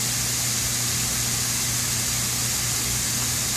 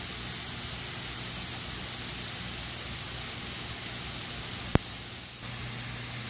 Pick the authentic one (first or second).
second